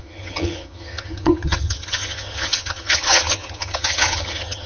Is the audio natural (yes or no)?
no